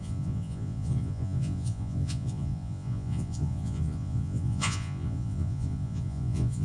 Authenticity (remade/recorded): remade